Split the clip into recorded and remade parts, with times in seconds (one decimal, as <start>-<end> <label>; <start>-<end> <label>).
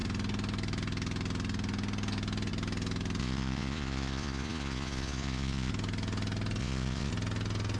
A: 0.0-3.2 recorded; 3.2-5.7 remade; 5.7-6.6 recorded; 6.6-7.1 remade; 7.1-7.8 recorded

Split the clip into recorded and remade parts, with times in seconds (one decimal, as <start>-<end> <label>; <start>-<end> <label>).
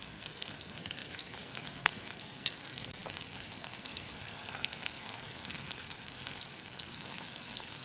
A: 0.0-7.8 remade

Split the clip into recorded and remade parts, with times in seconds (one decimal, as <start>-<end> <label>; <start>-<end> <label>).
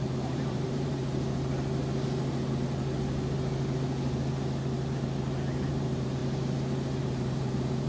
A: 0.0-1.0 remade; 1.0-5.7 recorded; 5.7-6.2 remade; 6.2-7.0 recorded; 7.0-7.9 remade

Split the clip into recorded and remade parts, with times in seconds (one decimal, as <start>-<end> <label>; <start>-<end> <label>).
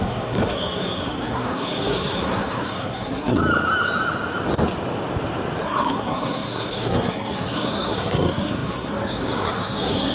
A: 0.0-3.4 remade; 3.4-5.6 recorded; 5.6-10.1 remade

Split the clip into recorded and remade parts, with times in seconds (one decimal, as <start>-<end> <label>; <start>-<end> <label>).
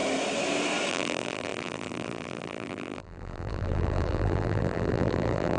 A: 0.0-0.9 recorded; 0.9-5.6 remade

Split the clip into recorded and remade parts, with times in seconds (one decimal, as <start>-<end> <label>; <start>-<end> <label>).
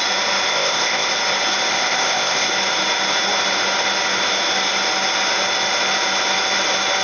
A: 0.0-0.5 recorded; 0.5-1.2 remade; 1.2-1.7 recorded; 1.7-2.5 remade; 2.5-7.0 recorded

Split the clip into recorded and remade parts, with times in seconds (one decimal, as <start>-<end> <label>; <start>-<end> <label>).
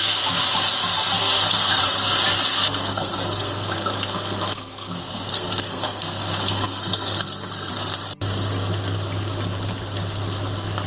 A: 0.0-1.2 recorded; 1.2-1.8 remade; 1.8-2.5 recorded; 2.5-7.7 remade; 7.7-10.9 recorded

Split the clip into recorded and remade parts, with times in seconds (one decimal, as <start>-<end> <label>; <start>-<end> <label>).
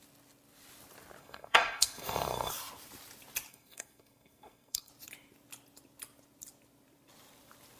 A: 0.0-1.2 recorded; 1.2-2.5 remade; 2.5-3.5 recorded; 3.5-4.9 remade; 4.9-7.8 recorded